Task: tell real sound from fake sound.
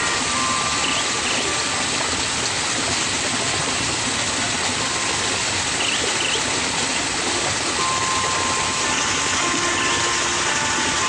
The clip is real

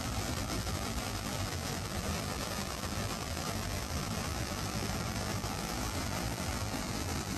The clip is fake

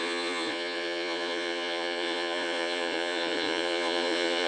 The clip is fake